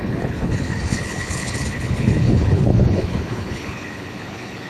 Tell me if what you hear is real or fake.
fake